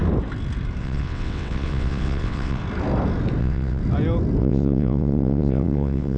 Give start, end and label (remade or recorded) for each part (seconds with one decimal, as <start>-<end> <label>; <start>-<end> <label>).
0.0-0.8 recorded; 0.8-2.6 remade; 2.6-3.4 recorded; 3.4-3.8 remade; 3.8-4.4 recorded; 4.4-6.2 remade